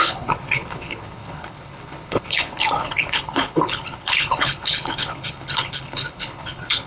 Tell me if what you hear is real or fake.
fake